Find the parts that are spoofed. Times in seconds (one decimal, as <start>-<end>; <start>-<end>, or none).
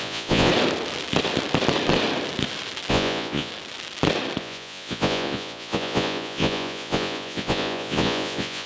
0.0-0.5; 2.9-3.5; 4.4-8.7